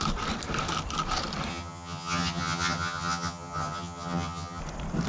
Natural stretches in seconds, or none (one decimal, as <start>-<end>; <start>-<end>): 0.0-1.5; 4.6-5.1